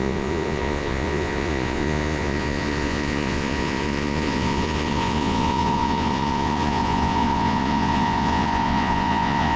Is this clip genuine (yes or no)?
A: no